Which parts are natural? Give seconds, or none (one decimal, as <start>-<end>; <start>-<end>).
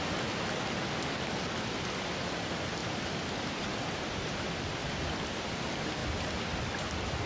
0.0-7.3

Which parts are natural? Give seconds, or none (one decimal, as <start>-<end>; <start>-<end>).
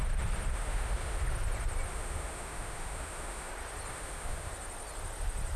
0.0-0.5; 1.2-1.9; 3.5-3.9; 4.5-5.6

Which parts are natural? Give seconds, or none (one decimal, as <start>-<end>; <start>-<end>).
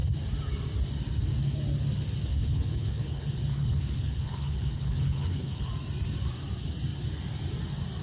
0.0-2.3; 5.7-8.0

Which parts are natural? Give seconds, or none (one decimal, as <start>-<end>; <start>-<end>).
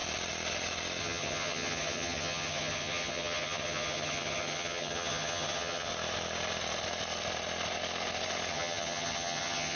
0.0-1.0; 5.9-8.5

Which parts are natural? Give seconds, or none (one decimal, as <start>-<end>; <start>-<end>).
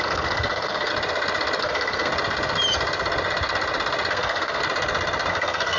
0.9-1.6; 2.1-4.1; 4.6-5.3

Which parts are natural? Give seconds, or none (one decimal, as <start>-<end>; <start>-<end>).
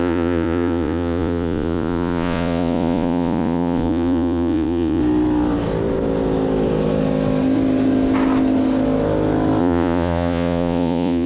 5.0-9.6